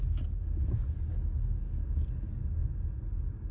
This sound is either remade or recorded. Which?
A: recorded